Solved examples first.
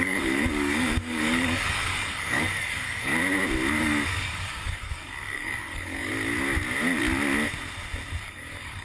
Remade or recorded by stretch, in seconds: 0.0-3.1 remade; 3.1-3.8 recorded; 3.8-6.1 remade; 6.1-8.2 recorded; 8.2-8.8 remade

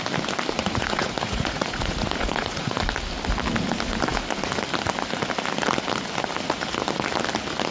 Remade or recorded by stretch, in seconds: 0.0-0.6 recorded; 0.6-2.8 remade; 2.8-7.7 recorded